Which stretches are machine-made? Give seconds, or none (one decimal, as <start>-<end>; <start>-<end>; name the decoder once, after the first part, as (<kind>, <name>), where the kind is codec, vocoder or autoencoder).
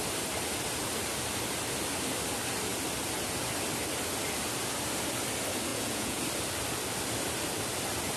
5.7-6.2 (vocoder, Vocos)